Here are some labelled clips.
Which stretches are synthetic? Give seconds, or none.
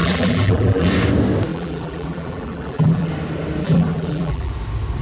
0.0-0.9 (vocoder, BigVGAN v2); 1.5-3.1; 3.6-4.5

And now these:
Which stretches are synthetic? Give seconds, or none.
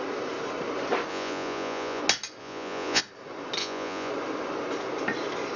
1.1-2.0 (vocoder, Vocos); 2.4-3.0; 3.6-4.1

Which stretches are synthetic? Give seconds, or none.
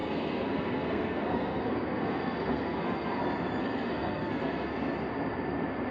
0.0-3.2 (codec, SNAC); 3.6-4.7